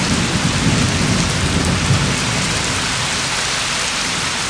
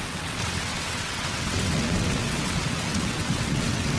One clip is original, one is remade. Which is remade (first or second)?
second